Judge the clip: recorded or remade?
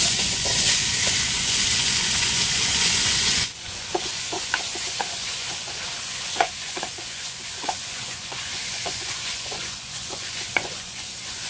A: remade